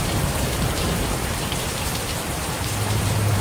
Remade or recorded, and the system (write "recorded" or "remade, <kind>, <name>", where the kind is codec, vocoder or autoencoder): remade, vocoder, BigVGAN v2